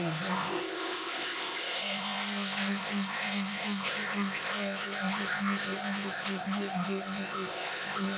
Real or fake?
fake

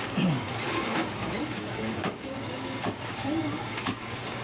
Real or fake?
fake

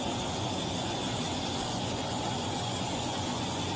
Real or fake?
fake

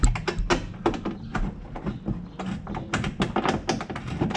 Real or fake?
real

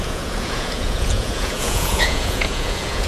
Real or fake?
fake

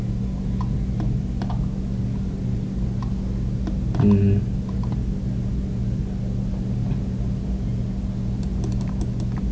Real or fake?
real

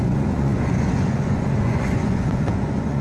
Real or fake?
fake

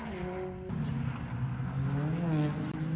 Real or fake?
real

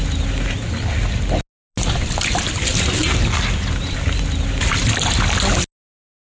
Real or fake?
real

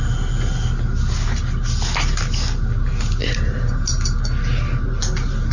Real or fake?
real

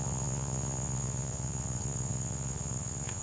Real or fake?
fake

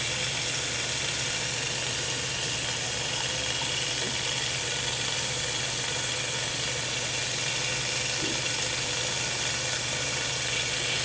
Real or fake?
real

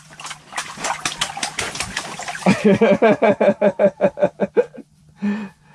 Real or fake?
real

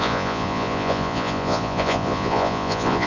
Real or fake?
fake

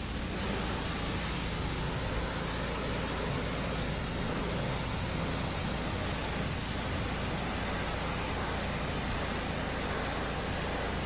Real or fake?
real